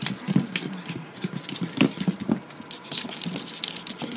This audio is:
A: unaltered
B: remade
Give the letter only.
B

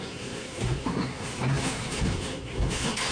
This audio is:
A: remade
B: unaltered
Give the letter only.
A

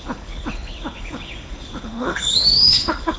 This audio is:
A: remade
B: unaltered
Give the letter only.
A